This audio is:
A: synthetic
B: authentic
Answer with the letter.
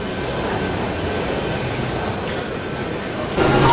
B